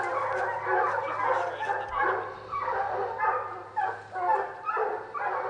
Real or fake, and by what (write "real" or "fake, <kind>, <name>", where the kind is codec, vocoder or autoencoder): real